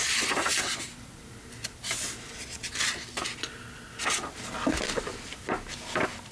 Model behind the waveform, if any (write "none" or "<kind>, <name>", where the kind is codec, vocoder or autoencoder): none